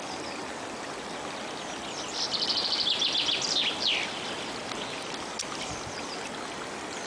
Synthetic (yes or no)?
no